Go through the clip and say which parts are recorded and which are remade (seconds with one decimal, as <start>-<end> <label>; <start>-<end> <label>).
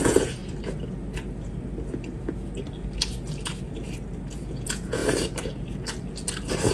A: 0.0-0.4 remade; 0.4-4.4 recorded; 4.4-5.0 remade; 5.0-6.7 recorded